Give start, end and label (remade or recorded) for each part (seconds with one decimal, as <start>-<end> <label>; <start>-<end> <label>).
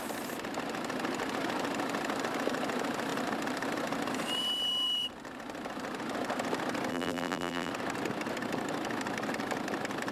0.0-6.9 recorded; 6.9-7.7 remade; 7.7-10.1 recorded